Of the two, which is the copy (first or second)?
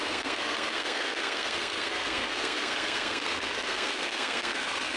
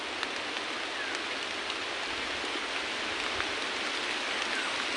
first